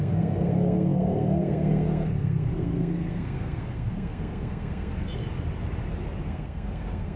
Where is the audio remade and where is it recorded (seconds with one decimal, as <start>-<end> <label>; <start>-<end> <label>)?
0.0-5.2 remade; 5.2-6.2 recorded; 6.2-7.2 remade